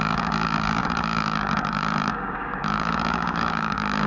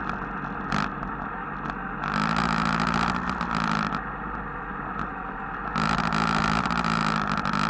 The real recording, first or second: second